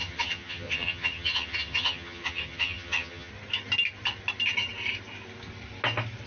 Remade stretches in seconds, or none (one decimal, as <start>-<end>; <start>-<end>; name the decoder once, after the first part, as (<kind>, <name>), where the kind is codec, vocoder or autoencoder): 0.0-3.3 (vocoder, HiFi-GAN)